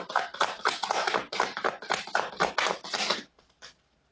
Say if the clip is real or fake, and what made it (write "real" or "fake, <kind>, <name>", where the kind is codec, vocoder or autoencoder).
real